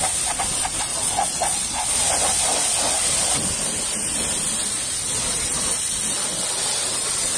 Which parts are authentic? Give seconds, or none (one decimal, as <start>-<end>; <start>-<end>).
0.0-0.9; 1.8-7.4